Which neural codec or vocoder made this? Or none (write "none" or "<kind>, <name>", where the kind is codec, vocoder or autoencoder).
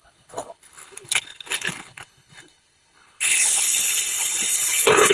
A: codec, HILCodec